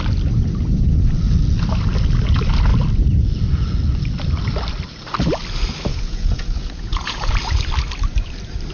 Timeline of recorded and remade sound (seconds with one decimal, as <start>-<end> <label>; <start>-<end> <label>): 0.0-5.9 recorded; 5.9-7.3 remade; 7.3-8.7 recorded

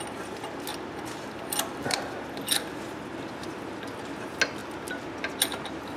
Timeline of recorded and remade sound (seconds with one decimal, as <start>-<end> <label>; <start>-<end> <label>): 0.0-0.7 recorded; 0.7-3.1 remade; 3.1-6.0 recorded

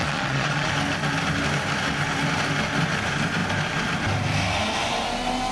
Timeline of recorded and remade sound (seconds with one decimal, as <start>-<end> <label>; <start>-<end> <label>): 0.0-0.7 remade; 0.7-5.5 recorded